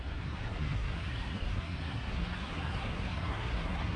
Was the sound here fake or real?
fake